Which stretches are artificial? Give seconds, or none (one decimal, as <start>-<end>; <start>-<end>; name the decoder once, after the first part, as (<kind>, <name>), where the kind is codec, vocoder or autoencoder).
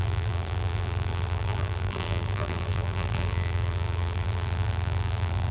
0.0-5.5 (vocoder, BigVGAN v2)